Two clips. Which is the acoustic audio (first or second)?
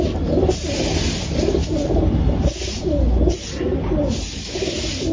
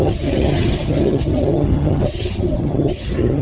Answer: first